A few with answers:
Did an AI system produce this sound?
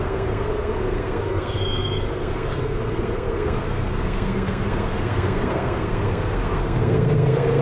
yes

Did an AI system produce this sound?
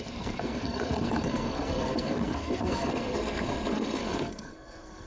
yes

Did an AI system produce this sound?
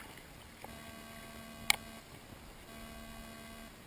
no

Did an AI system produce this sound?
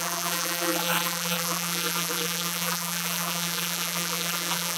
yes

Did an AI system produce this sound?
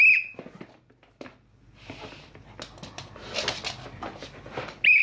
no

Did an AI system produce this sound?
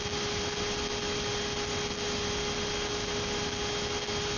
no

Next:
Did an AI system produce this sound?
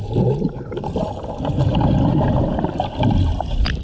no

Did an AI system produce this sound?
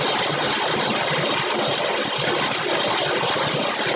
no